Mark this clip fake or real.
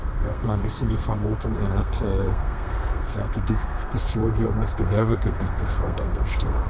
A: fake